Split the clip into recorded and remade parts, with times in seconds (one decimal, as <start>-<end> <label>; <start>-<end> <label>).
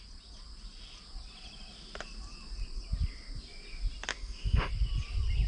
0.0-4.1 recorded; 4.1-4.7 remade; 4.7-5.5 recorded